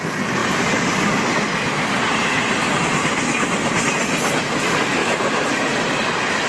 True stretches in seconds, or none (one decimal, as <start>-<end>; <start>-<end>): 0.0-6.5